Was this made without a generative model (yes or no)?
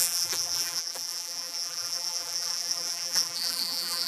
no